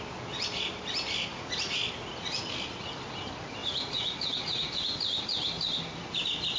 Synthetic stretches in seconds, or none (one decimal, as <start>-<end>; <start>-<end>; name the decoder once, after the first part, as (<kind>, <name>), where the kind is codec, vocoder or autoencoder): 1.3-1.8 (vocoder, Vocos); 3.6-4.7